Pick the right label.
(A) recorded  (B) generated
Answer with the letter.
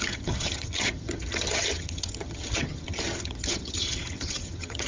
B